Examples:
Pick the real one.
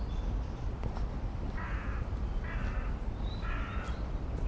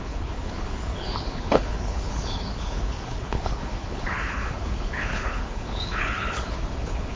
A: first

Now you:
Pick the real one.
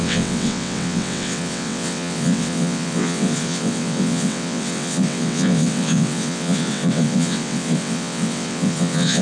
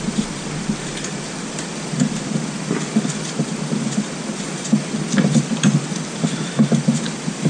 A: second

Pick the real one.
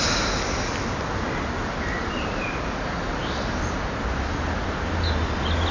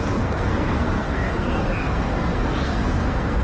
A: first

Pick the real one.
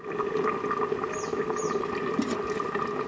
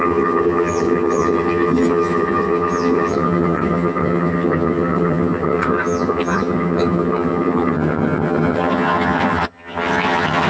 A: first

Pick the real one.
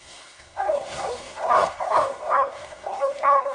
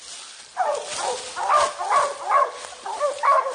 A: second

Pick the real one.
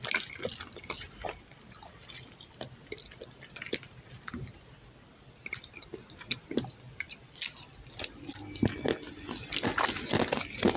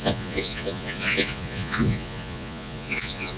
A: first